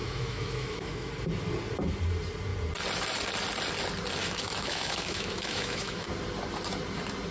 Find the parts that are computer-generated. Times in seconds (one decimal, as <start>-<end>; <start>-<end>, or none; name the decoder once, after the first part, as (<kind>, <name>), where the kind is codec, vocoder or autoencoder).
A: 0.0-1.1 (autoencoder, DAC-VAE); 4.2-6.1